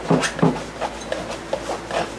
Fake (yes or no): no